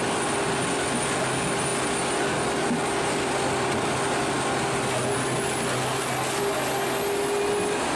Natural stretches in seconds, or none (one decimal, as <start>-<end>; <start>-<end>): 0.0-8.0